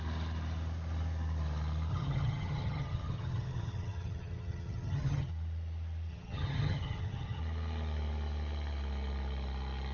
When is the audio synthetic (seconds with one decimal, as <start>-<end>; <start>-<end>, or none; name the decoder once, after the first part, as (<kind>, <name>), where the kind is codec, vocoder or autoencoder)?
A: 1.9-5.3 (vocoder, HiFi-GAN); 6.1-7.4